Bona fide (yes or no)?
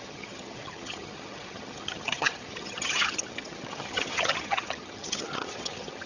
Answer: no